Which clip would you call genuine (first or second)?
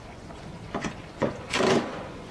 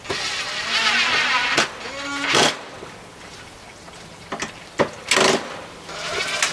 second